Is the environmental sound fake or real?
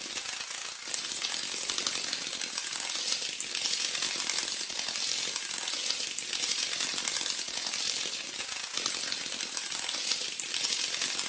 real